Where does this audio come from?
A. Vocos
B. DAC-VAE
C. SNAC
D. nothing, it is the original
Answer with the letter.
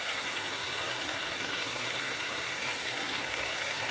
C